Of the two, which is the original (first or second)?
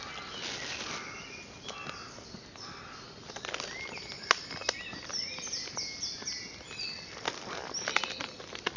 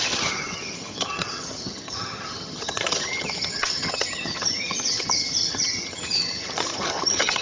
first